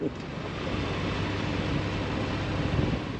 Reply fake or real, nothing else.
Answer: real